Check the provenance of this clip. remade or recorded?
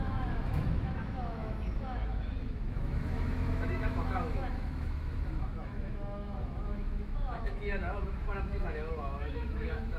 remade